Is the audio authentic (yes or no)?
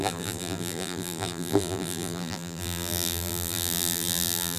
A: no